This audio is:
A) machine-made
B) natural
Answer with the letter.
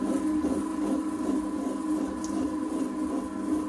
B